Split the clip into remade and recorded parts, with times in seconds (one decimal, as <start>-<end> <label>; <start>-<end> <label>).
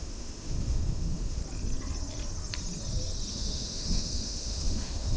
0.0-1.4 remade; 1.4-3.3 recorded; 3.3-5.2 remade